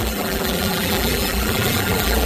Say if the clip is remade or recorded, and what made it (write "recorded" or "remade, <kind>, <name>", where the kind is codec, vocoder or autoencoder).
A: remade, vocoder, BigVGAN v2